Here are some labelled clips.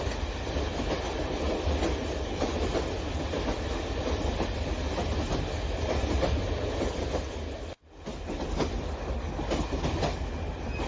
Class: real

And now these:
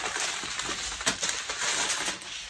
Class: real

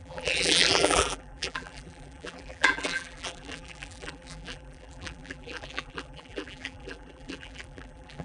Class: fake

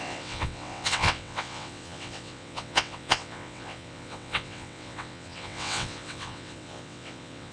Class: fake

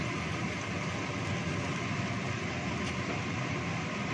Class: fake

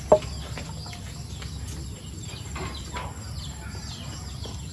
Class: real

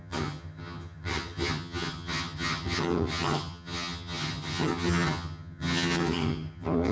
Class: fake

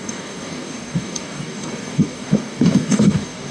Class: fake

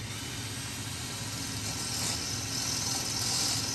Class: real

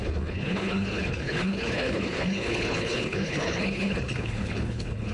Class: fake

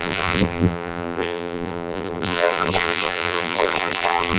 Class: fake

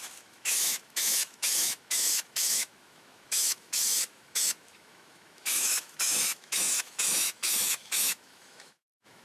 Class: fake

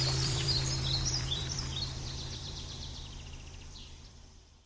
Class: fake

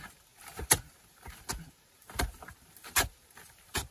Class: fake